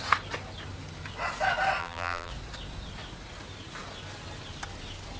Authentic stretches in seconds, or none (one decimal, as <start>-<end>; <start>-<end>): 0.0-1.8; 2.3-5.2